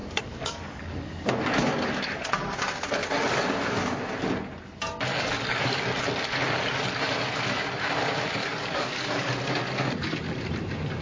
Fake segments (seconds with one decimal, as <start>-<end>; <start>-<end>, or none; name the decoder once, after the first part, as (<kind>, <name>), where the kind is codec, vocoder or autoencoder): 0.0-1.3 (codec, DAC); 5.1-5.8; 8.4-9.3